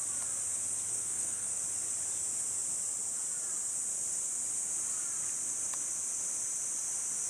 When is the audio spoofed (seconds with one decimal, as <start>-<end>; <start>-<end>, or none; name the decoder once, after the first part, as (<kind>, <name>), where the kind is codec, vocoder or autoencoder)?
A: 0.9-1.6 (codec, SNAC)